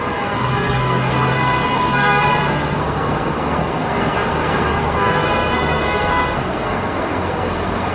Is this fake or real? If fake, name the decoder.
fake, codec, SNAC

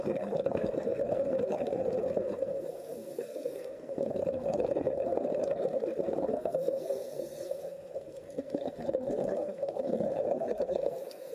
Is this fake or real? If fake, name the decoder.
fake, codec, SNAC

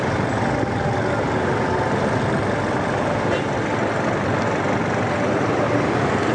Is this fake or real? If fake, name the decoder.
real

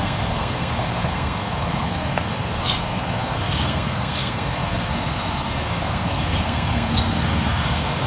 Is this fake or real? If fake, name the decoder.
fake, codec, SNAC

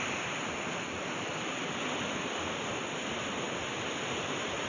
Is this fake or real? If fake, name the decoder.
real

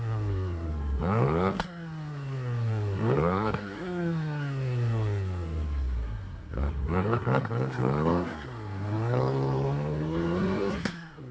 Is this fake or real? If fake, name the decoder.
fake, codec, SNAC